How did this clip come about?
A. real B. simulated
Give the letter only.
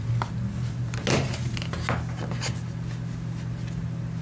A